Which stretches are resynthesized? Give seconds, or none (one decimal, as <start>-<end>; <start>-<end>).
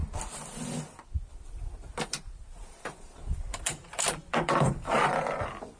1.8-5.3